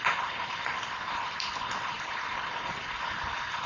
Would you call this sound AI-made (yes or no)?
no